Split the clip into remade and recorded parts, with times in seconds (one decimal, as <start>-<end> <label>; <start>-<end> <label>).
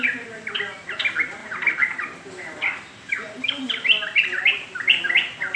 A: 0.0-5.6 recorded